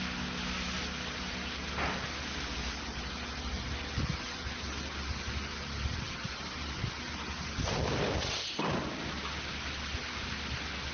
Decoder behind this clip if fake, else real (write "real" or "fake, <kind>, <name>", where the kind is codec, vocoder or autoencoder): real